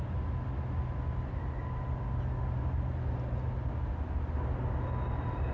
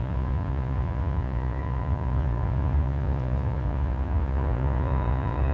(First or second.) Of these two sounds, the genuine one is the first